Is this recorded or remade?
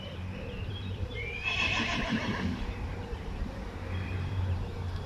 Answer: remade